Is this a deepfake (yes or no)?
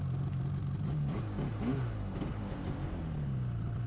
no